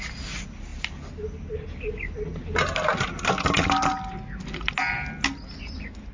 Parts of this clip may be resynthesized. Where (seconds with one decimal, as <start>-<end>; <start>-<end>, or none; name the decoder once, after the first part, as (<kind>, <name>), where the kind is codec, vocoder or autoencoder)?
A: none